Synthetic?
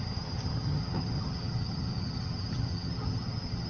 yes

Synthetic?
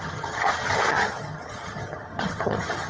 yes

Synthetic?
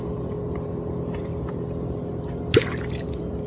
no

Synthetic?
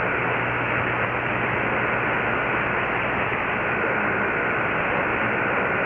no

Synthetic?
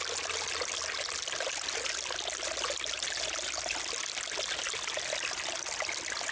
no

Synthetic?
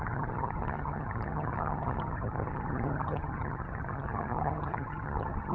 yes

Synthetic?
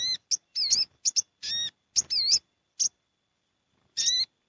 no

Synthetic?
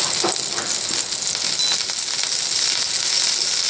no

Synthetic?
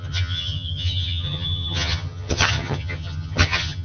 yes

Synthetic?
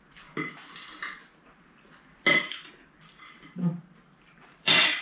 no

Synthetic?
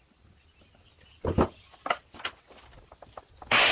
no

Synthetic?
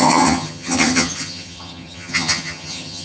yes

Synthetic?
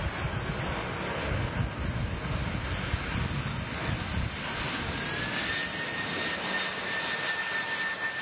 no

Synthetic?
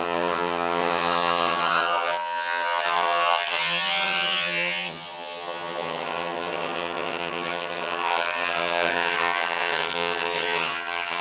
yes